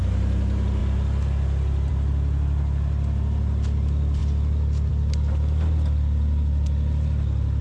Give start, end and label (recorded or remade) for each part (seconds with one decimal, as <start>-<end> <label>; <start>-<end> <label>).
0.0-7.6 recorded